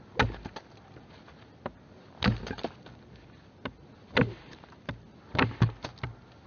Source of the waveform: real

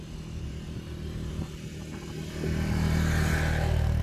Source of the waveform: real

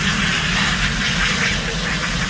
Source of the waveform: real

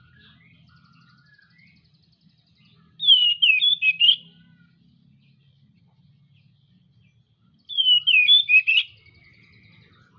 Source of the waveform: real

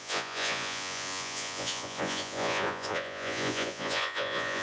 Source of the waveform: fake